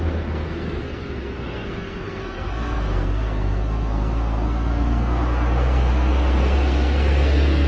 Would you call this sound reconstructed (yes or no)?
yes